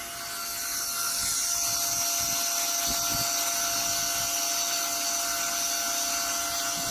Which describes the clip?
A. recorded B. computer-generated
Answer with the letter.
A